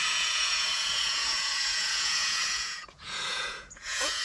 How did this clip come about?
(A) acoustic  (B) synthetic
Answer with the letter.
B